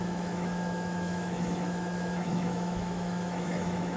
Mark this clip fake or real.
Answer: fake